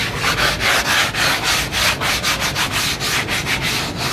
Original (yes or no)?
yes